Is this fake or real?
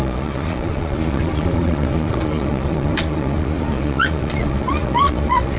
fake